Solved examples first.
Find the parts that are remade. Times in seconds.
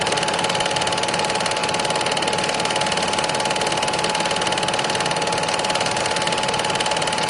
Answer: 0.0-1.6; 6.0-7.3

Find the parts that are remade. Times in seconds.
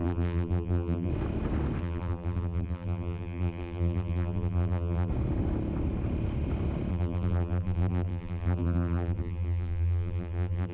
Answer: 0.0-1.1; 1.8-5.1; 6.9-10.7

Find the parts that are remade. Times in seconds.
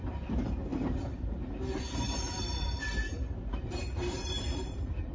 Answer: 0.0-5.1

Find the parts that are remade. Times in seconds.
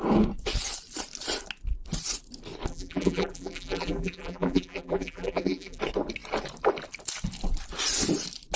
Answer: 2.7-5.8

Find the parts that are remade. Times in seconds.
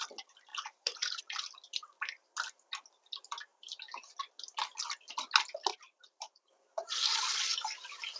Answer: 0.5-1.2; 3.5-4.1; 5.7-6.5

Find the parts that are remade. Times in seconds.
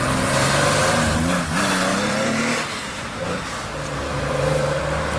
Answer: 1.9-5.2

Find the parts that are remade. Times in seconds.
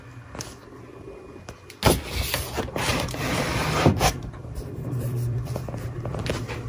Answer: 2.9-6.7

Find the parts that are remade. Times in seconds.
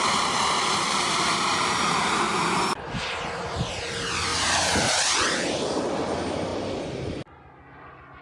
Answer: 0.0-2.3; 4.3-5.8